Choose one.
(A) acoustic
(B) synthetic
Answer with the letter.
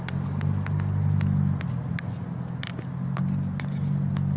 A